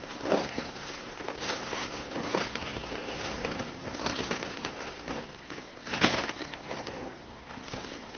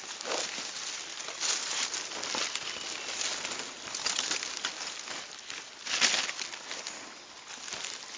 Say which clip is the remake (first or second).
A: first